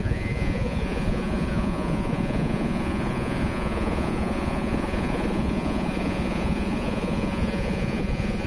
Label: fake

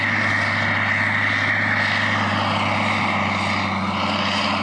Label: real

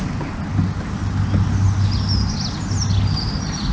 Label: real